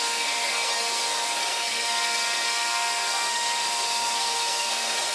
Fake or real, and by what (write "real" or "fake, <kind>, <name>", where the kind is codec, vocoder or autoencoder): fake, codec, SNAC